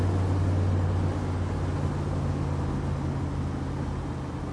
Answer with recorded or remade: recorded